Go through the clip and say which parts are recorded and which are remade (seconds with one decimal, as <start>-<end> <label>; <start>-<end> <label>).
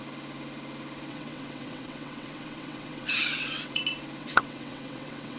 0.0-1.1 recorded; 1.1-3.8 remade; 3.8-4.2 recorded; 4.2-5.4 remade